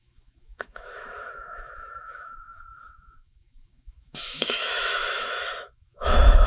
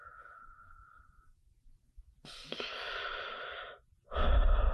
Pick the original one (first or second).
second